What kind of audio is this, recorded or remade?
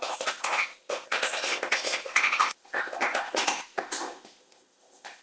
remade